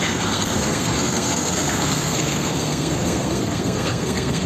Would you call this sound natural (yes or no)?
no